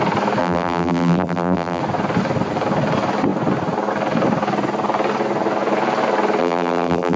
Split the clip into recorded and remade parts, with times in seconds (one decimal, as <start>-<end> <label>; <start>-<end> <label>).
0.0-0.4 recorded; 0.4-1.8 remade; 1.8-6.4 recorded; 6.4-7.2 remade